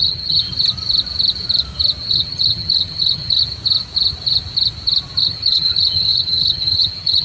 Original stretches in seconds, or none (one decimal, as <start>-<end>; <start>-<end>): 0.5-2.0; 3.4-5.2